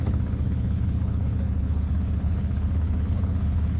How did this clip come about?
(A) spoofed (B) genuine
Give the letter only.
A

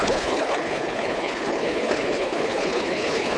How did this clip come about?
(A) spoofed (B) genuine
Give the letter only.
A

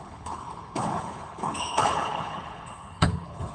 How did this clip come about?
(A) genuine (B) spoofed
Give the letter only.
B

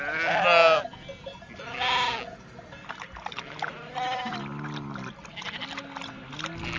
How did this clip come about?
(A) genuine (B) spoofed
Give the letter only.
A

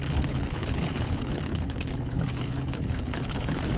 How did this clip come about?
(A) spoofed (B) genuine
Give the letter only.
A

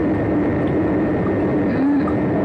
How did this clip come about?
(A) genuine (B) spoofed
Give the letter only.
A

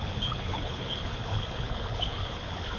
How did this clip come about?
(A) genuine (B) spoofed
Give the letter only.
B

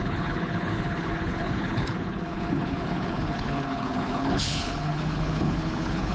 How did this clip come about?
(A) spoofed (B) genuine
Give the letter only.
A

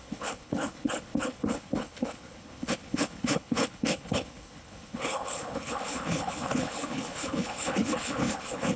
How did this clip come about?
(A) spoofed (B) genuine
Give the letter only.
A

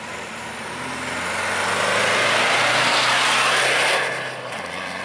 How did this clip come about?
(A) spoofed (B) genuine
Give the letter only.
B